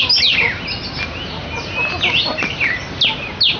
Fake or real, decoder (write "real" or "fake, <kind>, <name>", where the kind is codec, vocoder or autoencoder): real